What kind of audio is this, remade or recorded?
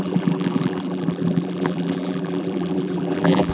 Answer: remade